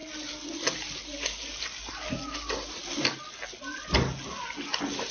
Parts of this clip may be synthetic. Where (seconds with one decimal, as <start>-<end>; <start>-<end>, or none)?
none